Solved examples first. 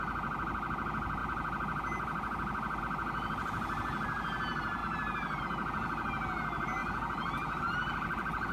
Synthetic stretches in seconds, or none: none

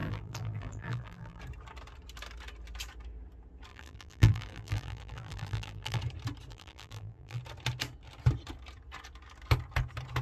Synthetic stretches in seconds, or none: 0.0-1.4; 3.7-6.0; 6.5-7.4